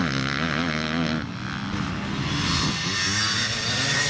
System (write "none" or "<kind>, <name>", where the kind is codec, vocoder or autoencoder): none